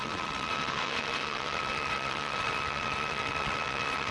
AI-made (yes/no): yes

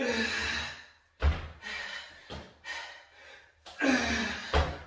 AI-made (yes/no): no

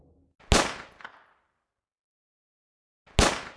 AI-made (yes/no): no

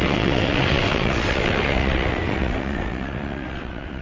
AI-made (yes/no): yes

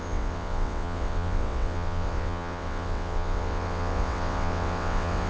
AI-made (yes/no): yes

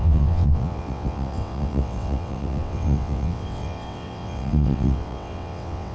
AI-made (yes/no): yes